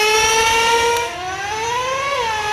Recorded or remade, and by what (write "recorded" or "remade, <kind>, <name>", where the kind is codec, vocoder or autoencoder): recorded